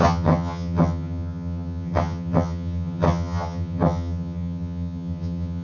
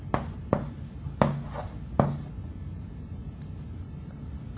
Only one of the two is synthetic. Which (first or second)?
first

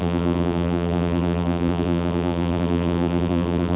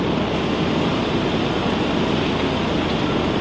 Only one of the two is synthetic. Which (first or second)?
first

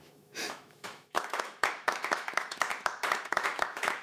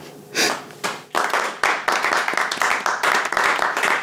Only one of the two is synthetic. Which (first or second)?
first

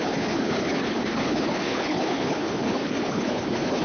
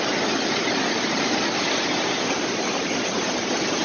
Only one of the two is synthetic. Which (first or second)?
first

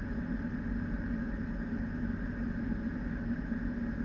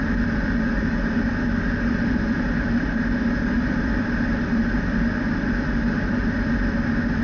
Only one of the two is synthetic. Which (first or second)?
second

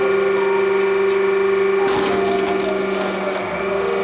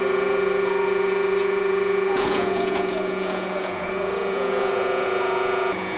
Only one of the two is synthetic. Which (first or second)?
second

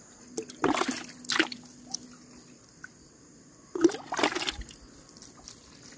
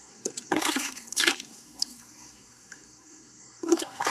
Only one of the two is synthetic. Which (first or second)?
second